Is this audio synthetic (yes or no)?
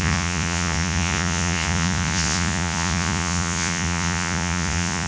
yes